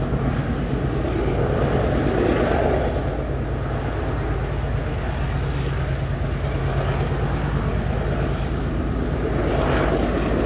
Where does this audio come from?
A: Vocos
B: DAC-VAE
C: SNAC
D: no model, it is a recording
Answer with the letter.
D